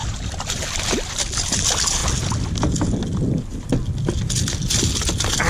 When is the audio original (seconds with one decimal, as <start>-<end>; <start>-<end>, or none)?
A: 1.1-5.5